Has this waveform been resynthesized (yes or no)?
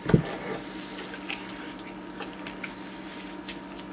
no